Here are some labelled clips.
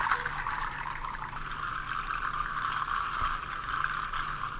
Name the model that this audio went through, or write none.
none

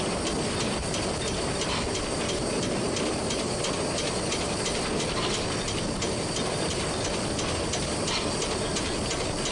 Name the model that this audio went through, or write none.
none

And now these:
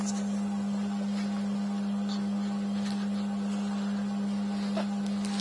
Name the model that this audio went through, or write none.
none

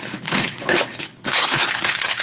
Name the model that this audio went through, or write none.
codec, HILCodec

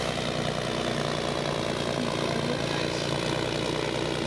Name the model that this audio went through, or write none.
none